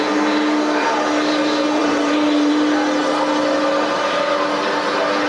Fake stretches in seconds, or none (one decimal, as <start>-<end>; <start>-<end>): 1.8-2.5